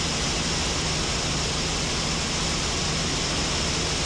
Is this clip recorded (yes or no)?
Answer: yes